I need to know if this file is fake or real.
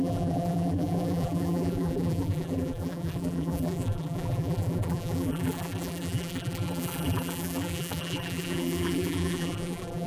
fake